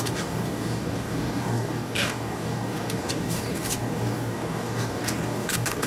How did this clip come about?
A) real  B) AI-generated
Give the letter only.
B